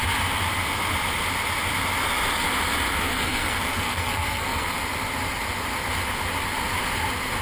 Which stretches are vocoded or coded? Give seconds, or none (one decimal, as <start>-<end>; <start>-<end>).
3.0-4.8